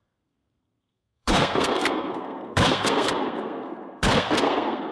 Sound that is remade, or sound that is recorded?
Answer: remade